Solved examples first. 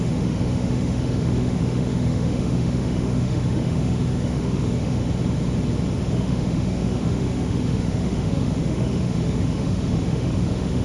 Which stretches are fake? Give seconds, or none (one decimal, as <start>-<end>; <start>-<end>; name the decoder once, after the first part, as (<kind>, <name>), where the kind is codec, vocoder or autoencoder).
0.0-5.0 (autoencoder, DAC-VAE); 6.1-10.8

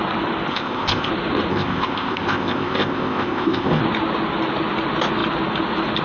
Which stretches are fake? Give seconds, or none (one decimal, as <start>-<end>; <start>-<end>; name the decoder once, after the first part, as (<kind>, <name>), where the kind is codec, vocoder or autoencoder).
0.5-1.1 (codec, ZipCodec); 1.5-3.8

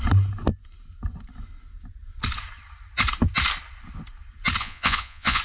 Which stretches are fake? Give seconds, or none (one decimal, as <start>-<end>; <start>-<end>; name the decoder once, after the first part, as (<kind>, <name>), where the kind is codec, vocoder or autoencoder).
4.6-5.4 (vocoder, Vocos)